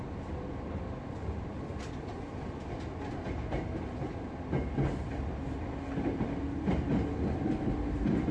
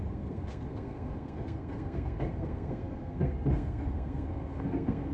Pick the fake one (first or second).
second